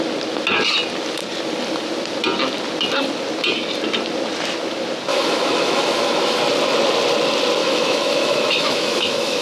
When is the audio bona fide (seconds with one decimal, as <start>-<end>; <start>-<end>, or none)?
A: 0.0-5.1; 6.4-7.6